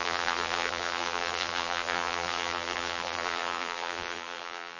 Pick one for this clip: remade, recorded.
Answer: remade